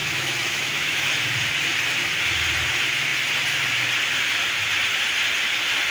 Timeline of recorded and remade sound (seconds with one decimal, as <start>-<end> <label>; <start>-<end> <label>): 0.0-1.1 remade; 1.1-5.9 recorded